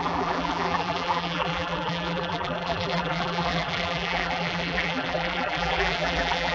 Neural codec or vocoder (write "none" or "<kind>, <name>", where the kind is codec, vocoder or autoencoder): vocoder, BigVGAN v2